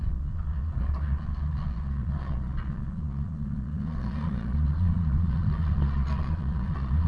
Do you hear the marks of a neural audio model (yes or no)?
yes